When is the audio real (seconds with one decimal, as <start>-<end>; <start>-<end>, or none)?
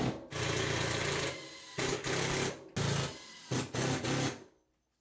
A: 0.0-5.0